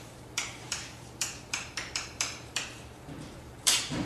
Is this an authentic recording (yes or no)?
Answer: no